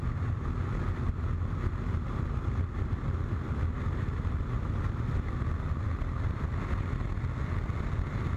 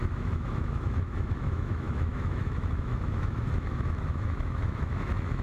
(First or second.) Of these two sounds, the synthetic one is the second